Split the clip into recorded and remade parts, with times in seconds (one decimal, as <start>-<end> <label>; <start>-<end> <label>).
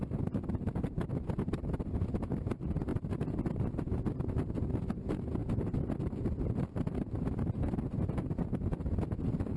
0.0-2.9 recorded; 2.9-4.5 remade; 4.5-5.4 recorded; 5.4-6.9 remade; 6.9-9.6 recorded